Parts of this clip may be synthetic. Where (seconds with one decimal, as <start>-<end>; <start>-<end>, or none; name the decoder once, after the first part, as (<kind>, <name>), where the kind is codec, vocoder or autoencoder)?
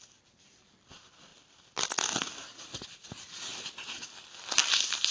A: 0.0-1.3 (vocoder, BigVGAN v2); 2.4-3.5